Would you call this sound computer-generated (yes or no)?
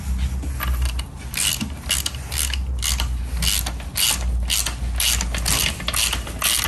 no